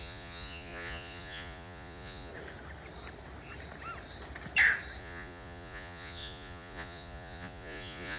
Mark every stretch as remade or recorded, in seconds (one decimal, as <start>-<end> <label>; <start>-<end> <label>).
0.0-2.3 remade; 2.3-5.0 recorded; 5.0-8.2 remade